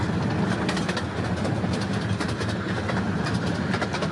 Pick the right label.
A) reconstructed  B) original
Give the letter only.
B